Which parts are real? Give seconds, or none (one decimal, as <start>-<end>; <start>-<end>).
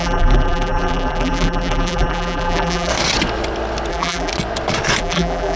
2.9-3.9; 4.3-5.0